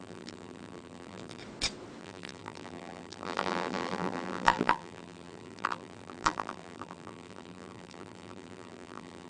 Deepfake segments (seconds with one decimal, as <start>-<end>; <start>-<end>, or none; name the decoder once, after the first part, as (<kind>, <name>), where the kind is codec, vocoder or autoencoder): 0.0-1.4 (vocoder, BigVGAN v2); 2.0-9.3